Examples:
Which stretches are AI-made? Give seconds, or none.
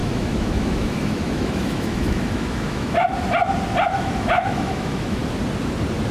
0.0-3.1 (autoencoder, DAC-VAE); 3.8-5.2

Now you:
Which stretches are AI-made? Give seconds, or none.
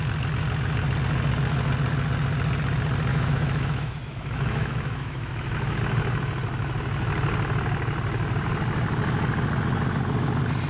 3.1-5.8 (autoencoder, DAC-VAE)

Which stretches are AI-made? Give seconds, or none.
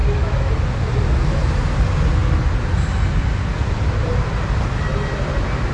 0.0-0.5 (autoencoder, DAC-VAE)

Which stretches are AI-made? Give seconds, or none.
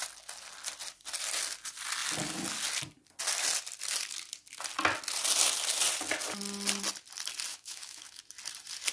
7.5-8.2 (autoencoder, DAC-VAE)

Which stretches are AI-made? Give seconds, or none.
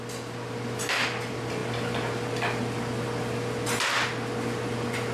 none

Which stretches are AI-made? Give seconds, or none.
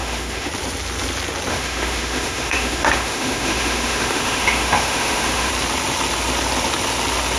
0.0-0.5 (autoencoder, DAC-VAE); 1.5-5.5